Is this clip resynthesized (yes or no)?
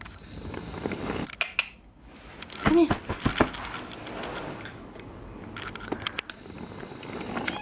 no